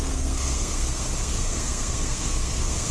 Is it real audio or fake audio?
fake